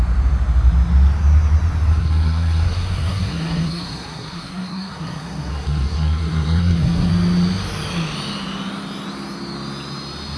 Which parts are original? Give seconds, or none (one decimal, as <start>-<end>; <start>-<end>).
0.0-1.9; 7.1-10.4